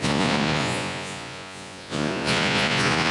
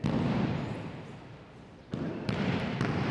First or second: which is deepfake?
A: first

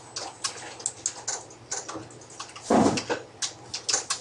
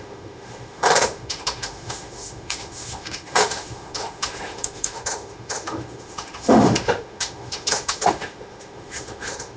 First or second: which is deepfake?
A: second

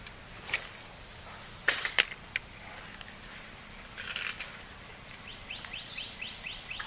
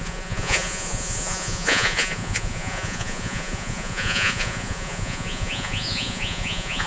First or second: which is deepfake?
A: second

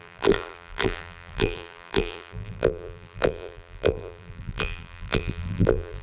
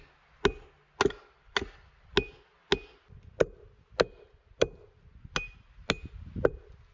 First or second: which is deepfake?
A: first